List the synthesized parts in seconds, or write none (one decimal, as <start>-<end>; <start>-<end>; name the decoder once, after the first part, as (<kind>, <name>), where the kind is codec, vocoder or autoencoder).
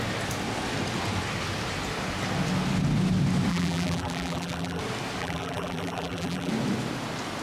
3.5-4.8 (vocoder, BigVGAN v2); 5.2-6.5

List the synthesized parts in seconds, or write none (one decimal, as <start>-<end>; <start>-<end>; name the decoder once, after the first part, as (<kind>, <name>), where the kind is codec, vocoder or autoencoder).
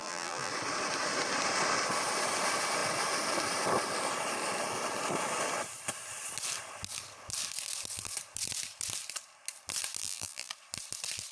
0.0-0.5 (vocoder, BigVGAN v2); 10.0-10.5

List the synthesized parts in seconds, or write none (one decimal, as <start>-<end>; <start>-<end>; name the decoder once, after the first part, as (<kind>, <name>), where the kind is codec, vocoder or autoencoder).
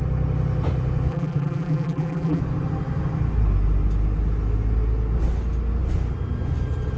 1.1-2.4 (vocoder, BigVGAN v2)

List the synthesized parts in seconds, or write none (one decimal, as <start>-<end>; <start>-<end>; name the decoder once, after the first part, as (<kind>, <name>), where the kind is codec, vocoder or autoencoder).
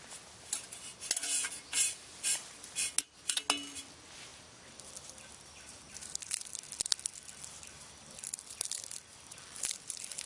none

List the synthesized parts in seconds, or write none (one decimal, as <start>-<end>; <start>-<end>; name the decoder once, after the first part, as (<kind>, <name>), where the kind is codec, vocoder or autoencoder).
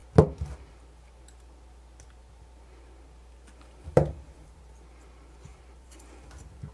3.9-4.6 (vocoder, BigVGAN v2); 5.5-6.7